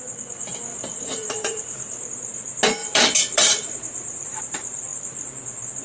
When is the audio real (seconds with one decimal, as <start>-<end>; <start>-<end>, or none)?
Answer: 0.0-0.7; 2.1-2.8; 4.4-5.8